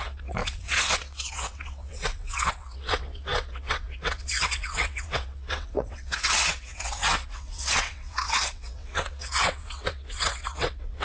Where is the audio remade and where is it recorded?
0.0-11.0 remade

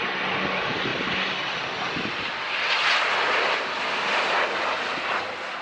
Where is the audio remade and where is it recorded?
0.0-5.6 recorded

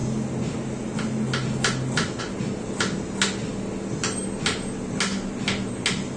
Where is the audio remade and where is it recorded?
0.0-6.2 recorded

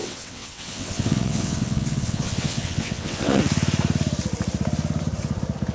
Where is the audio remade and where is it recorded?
0.0-3.4 remade; 3.4-5.7 recorded

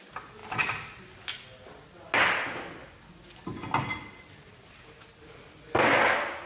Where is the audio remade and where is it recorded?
0.0-6.5 recorded

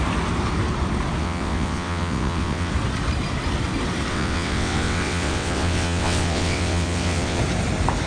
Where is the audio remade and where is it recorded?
0.0-1.2 recorded; 1.2-2.7 remade; 2.7-4.1 recorded; 4.1-7.4 remade; 7.4-8.1 recorded